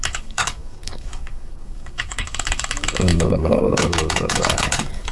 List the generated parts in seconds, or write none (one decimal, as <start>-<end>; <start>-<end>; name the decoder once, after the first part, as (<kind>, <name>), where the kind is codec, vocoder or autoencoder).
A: 0.0-5.1 (codec, DAC)